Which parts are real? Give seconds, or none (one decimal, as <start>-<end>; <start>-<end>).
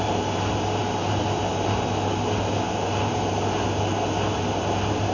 0.0-5.1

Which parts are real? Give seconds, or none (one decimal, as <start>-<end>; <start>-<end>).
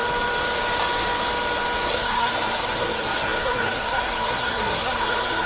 0.0-1.9